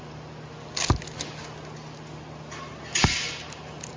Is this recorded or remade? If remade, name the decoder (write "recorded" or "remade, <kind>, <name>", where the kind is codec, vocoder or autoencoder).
recorded